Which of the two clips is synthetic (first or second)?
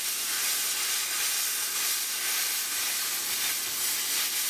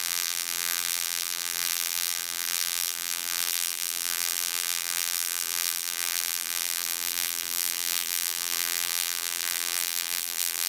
second